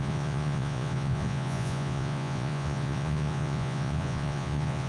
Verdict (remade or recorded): remade